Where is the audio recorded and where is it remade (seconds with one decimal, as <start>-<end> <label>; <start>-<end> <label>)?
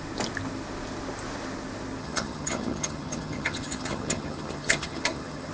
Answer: 0.0-2.0 recorded; 2.0-5.5 remade